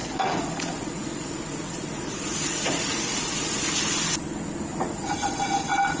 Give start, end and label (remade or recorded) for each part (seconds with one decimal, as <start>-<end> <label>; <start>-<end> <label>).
0.0-3.6 remade; 3.6-4.7 recorded; 4.7-5.5 remade; 5.5-6.0 recorded